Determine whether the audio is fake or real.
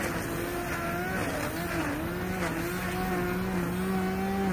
real